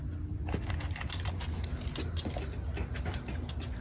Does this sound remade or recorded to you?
recorded